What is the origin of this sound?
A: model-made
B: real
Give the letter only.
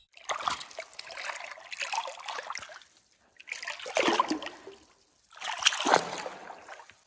B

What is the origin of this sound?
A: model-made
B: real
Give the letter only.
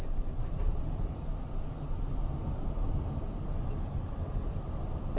B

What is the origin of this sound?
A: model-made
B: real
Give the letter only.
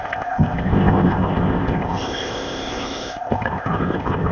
A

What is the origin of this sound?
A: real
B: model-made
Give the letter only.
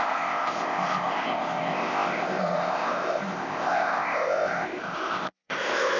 B